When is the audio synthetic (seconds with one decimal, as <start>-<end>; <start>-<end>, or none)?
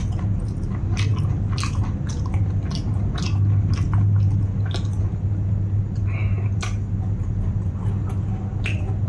none